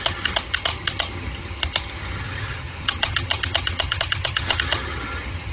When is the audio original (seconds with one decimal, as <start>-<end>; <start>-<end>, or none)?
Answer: none